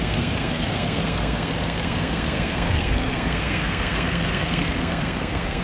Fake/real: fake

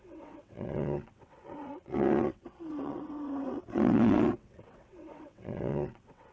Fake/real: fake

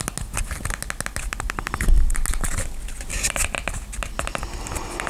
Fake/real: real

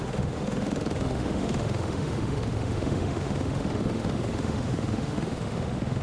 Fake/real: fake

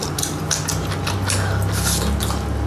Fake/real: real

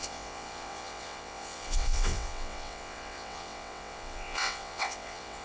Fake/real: fake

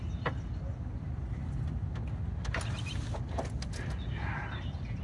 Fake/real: real